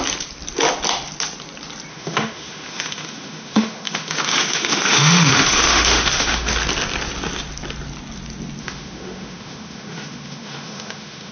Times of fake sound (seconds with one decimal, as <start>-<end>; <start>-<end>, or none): 1.9-6.5; 8.6-11.3